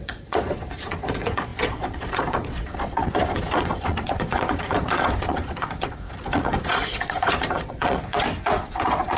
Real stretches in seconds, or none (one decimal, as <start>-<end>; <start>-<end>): none